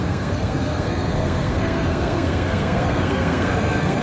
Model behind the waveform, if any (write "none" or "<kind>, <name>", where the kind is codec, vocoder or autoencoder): codec, SNAC